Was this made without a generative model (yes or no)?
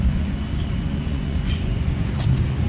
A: no